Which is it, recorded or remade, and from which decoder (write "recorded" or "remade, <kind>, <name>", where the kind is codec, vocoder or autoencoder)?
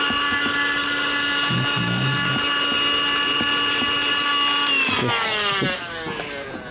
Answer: recorded